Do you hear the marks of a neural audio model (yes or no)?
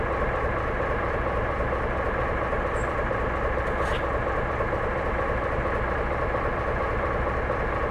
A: no